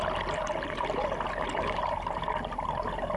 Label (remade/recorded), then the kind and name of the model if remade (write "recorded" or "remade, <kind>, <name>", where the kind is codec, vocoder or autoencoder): recorded